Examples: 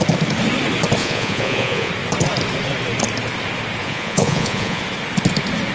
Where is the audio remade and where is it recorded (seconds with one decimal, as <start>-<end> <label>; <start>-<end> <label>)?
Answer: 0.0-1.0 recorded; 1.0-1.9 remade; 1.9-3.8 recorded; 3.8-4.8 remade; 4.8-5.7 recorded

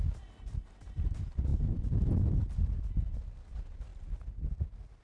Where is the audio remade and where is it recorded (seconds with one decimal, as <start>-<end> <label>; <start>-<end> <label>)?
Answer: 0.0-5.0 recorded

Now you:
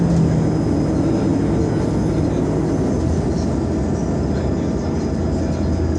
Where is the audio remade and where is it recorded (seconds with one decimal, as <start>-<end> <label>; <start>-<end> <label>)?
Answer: 0.0-6.0 recorded